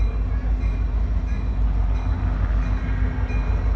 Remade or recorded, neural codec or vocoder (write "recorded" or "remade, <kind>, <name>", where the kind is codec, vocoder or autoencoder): recorded